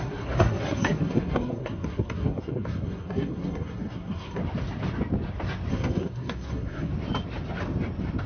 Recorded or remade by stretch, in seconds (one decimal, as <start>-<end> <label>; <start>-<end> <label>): 0.0-4.4 remade; 4.4-5.7 recorded; 5.7-6.9 remade; 6.9-8.3 recorded